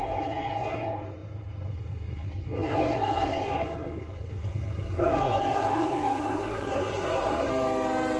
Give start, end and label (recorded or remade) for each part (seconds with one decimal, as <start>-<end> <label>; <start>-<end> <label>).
0.0-7.5 remade; 7.5-8.2 recorded